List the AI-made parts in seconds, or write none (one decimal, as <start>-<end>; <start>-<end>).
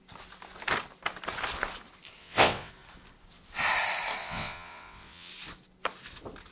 2.2-2.7; 4.2-5.3